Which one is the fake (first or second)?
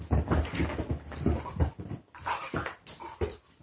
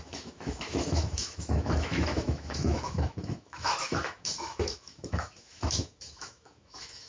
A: second